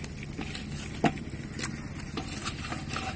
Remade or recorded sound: recorded